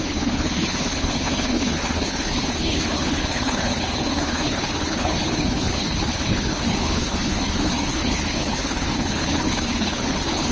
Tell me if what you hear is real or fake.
fake